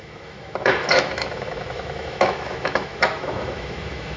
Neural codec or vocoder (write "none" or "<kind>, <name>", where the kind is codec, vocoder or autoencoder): autoencoder, DAC-VAE